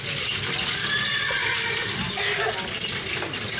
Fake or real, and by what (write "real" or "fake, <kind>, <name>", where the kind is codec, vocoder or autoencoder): real